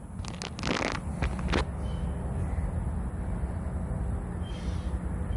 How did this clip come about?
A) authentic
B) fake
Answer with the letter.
A